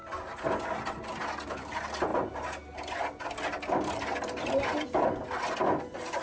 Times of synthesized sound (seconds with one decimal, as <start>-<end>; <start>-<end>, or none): none